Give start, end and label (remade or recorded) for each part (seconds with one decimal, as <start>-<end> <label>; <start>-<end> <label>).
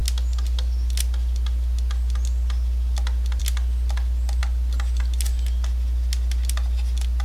0.0-7.2 recorded